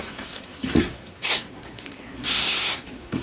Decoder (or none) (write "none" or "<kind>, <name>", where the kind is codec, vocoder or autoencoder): codec, SNAC